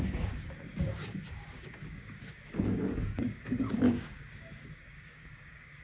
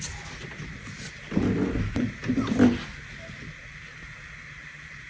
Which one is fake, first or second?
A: first